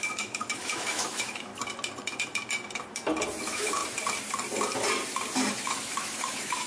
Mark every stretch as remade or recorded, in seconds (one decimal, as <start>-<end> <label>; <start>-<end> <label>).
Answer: 0.0-1.5 remade; 1.5-3.4 recorded; 3.4-3.8 remade; 3.8-5.5 recorded; 5.5-6.7 remade